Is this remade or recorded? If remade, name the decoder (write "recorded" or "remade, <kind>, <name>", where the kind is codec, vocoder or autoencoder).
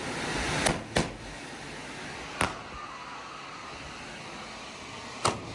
recorded